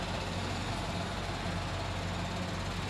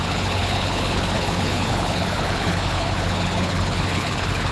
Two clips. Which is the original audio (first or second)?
first